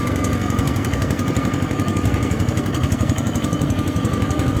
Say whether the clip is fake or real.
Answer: fake